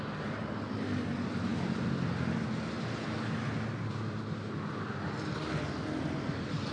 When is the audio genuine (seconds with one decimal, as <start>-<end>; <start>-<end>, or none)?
0.0-6.7